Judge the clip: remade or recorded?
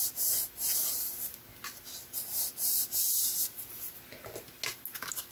recorded